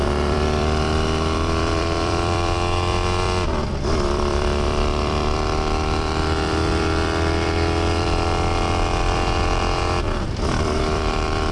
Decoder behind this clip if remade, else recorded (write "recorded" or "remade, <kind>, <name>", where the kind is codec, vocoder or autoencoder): remade, vocoder, BigVGAN v2